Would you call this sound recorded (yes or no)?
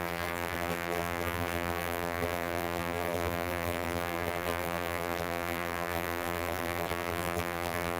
no